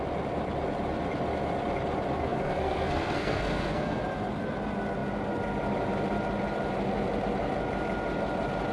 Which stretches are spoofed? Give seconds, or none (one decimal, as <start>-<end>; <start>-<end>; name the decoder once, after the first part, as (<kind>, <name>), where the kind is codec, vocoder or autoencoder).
2.2-4.0 (codec, SNAC)

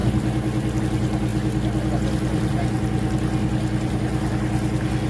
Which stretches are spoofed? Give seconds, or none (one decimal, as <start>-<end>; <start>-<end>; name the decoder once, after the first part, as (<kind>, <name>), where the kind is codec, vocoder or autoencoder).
none

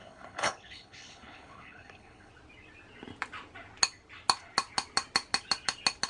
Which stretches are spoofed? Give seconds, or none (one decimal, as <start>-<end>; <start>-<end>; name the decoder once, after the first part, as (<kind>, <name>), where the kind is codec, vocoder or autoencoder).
0.0-2.3 (codec, HILCodec)